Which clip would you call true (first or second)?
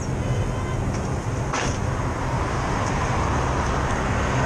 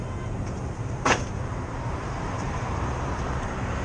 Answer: first